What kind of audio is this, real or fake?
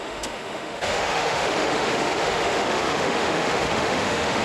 fake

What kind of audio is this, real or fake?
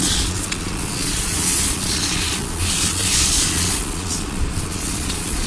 fake